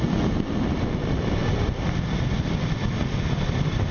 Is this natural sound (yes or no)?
yes